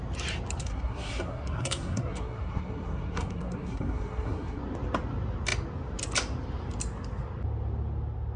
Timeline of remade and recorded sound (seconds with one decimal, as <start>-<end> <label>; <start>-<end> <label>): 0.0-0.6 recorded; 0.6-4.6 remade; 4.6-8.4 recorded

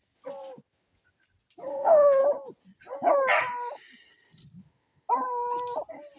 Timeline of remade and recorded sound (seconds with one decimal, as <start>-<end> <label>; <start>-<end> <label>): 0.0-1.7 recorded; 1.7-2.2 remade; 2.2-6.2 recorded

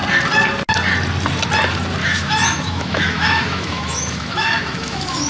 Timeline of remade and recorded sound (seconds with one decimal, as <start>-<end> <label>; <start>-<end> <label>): 0.0-2.0 recorded; 2.0-5.3 remade

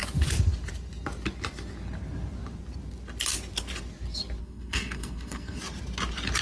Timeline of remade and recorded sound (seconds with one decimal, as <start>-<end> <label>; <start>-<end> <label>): 0.0-4.4 recorded; 4.4-5.6 remade; 5.6-6.4 recorded

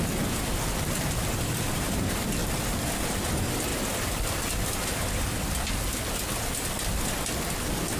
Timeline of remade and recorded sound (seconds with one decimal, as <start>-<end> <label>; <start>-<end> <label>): 0.0-8.0 recorded